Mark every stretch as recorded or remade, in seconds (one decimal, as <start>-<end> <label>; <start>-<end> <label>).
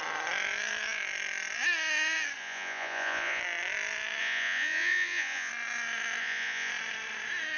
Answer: 0.0-2.4 recorded; 2.4-3.4 remade; 3.4-4.2 recorded; 4.2-5.5 remade; 5.5-6.2 recorded; 6.2-6.7 remade; 6.7-7.6 recorded